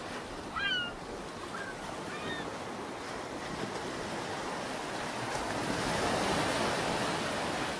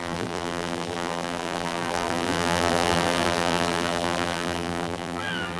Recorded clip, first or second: first